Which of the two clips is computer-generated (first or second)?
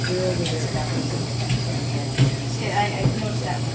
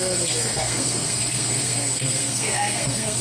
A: second